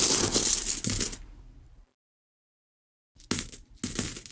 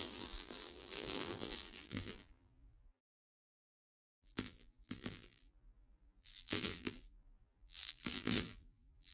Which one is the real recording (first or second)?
first